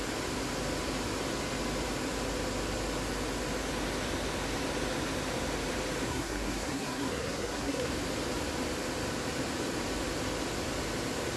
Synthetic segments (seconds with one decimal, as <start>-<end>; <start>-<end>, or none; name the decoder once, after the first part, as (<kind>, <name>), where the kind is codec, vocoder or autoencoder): 6.1-7.9 (codec, SNAC)